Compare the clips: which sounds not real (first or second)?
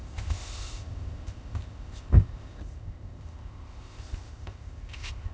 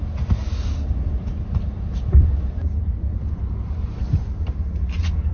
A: first